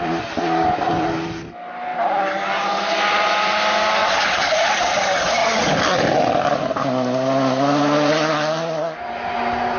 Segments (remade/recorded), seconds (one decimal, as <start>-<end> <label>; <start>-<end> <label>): 0.0-9.8 recorded